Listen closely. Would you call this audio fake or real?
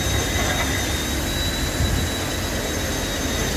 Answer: real